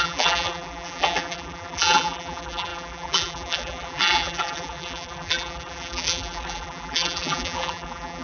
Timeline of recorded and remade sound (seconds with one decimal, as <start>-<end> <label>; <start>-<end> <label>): 0.0-8.2 remade